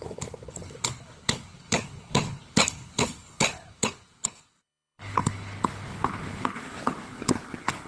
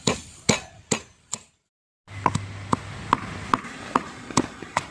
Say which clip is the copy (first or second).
first